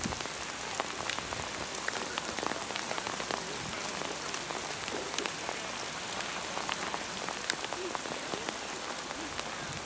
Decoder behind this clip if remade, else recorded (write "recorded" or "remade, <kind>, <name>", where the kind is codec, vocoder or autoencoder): recorded